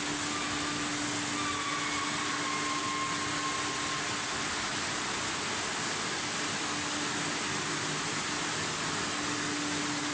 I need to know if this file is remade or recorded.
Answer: recorded